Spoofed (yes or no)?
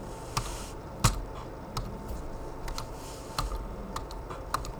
no